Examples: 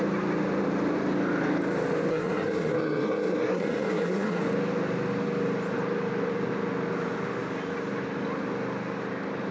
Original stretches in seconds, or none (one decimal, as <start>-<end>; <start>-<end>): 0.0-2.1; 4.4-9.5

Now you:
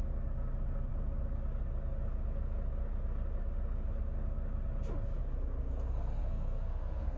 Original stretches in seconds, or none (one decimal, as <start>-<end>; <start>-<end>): 0.0-6.2

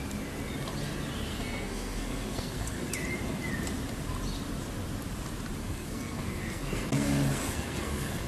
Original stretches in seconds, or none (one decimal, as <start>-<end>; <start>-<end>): 0.0-1.3; 2.9-5.6

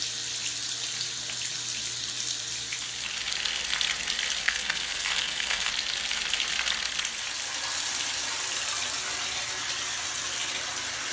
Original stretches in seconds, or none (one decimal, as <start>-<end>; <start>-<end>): 0.0-4.4; 5.7-11.1